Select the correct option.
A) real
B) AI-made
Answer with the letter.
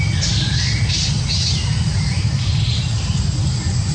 B